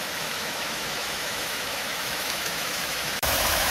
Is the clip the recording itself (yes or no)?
no